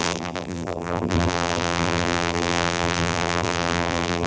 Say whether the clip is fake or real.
fake